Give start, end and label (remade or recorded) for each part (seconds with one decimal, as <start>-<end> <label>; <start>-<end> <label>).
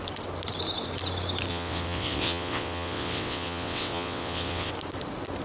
0.0-1.5 recorded; 1.5-4.7 remade; 4.7-5.4 recorded